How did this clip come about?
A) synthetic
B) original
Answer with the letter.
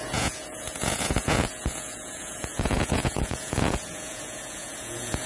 A